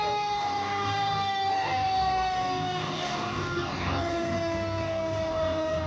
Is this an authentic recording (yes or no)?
no